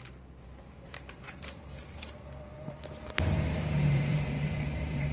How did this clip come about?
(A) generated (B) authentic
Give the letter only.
A